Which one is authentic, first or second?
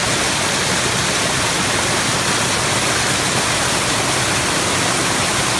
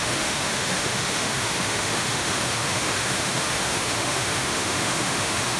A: first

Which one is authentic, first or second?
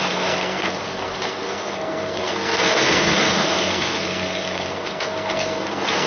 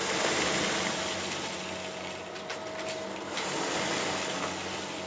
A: second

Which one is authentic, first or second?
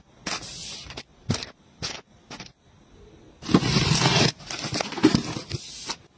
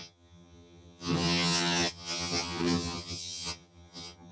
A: first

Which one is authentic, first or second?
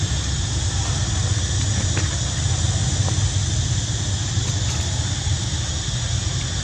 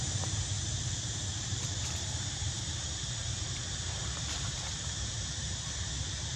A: first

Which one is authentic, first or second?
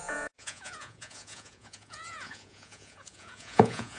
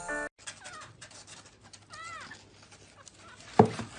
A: second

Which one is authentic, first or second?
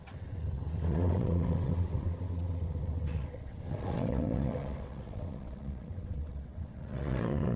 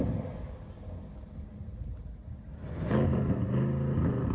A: second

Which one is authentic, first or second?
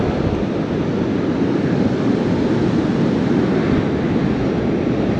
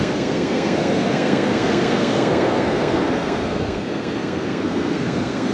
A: first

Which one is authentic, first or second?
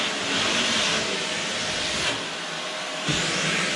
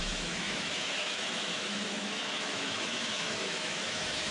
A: first